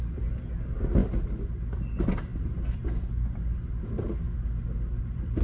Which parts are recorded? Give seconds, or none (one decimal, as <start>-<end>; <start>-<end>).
0.0-5.4